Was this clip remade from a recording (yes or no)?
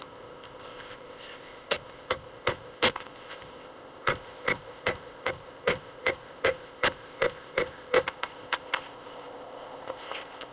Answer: yes